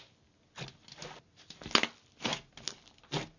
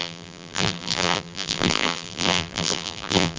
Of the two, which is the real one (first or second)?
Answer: first